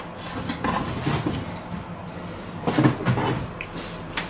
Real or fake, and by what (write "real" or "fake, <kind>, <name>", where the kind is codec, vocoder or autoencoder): real